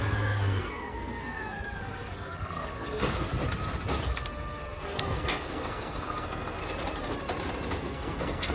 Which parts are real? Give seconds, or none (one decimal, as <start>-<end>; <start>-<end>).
3.3-4.0; 6.6-7.8